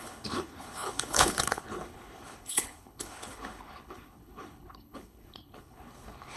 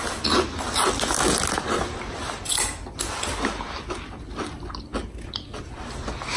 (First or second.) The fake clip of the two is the first